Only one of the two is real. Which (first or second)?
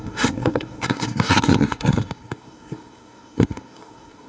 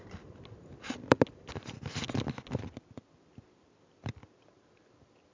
second